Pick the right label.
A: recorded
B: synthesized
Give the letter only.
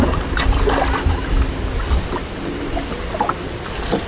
A